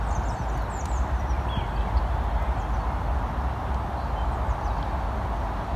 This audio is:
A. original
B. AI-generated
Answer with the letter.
A